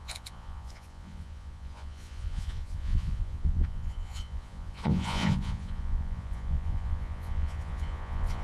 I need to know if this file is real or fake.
fake